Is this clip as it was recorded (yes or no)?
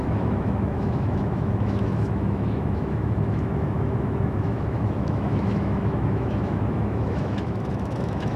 no